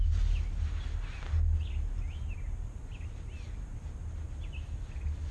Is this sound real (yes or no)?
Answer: yes